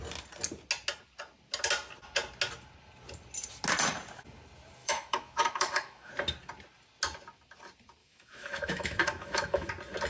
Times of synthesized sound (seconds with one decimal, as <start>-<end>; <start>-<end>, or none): 4.8-6.1; 8.0-9.7